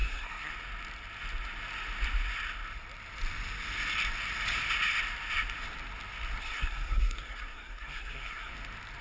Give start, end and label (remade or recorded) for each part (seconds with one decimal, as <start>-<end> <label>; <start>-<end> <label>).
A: 0.0-0.5 remade; 0.5-6.4 recorded; 6.4-8.5 remade; 8.5-9.0 recorded